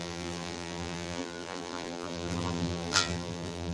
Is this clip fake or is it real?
fake